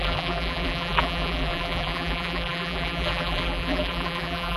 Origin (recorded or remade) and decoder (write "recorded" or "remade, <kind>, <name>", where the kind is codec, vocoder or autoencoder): remade, vocoder, BigVGAN v2